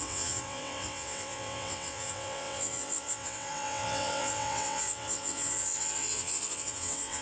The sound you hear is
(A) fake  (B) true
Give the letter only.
A